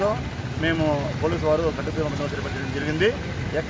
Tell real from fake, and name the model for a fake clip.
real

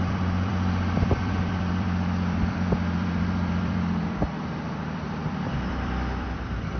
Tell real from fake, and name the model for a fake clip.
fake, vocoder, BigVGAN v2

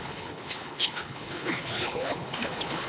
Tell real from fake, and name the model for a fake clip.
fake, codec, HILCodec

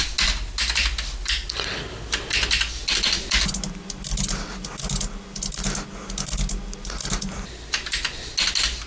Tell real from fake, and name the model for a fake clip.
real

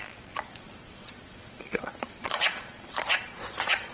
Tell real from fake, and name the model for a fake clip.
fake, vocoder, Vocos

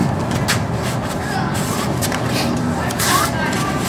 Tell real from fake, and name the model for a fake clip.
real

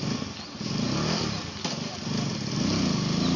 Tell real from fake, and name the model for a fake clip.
real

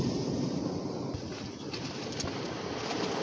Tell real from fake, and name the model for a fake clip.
real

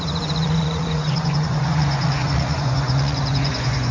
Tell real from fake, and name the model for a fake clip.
fake, vocoder, Vocos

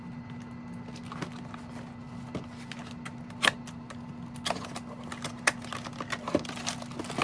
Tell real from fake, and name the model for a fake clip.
real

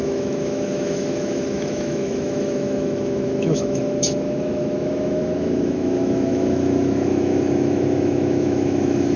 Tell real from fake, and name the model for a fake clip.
fake, autoencoder, DAC-VAE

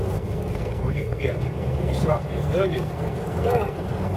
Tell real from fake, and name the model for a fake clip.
fake, codec, SNAC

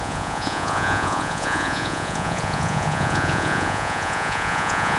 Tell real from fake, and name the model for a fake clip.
fake, vocoder, Vocos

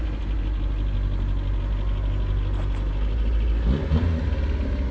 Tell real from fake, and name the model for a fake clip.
real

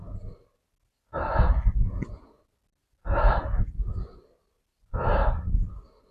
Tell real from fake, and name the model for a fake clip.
real